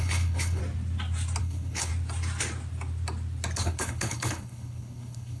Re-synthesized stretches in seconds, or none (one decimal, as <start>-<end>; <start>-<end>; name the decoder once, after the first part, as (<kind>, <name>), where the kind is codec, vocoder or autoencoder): 0.0-0.6 (codec, HILCodec); 1.4-1.9; 3.6-5.4